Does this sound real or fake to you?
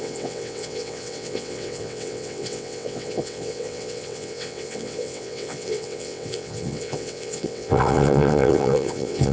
fake